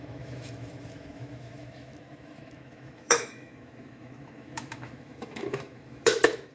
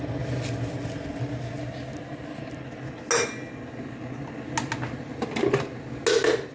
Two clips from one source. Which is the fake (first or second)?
first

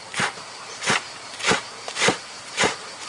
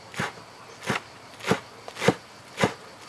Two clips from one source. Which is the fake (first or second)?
first